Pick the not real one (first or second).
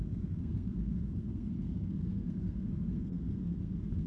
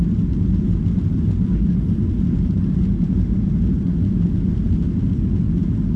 first